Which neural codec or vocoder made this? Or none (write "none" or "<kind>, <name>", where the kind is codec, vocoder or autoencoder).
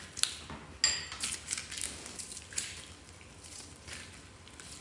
none